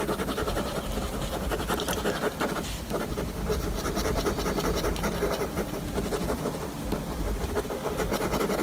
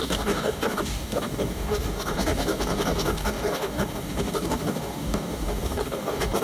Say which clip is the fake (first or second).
second